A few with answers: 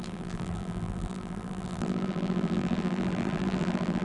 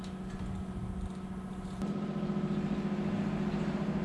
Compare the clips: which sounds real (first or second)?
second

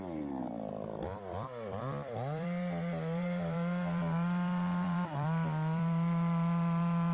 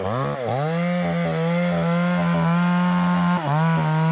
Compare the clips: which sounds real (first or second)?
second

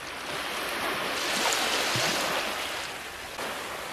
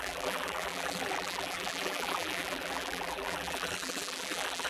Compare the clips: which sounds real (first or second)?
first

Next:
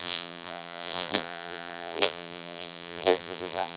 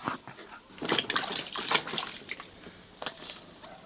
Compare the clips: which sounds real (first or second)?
second